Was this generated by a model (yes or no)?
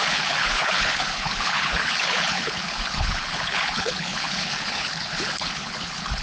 yes